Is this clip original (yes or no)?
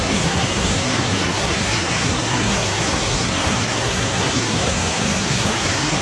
no